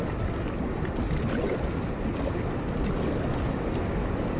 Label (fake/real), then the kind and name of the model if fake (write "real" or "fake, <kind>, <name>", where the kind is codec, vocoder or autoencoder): real